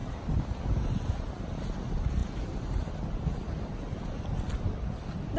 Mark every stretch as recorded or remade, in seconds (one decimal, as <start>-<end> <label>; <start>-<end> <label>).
0.0-5.4 recorded